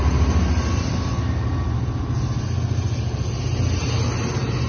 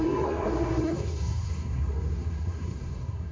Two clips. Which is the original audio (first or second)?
first